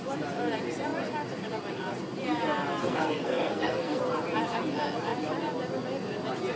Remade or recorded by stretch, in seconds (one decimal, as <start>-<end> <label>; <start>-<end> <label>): 0.0-2.8 recorded; 2.8-4.0 remade; 4.0-6.6 recorded